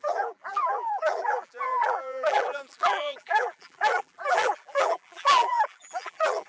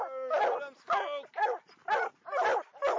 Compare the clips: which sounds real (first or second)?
second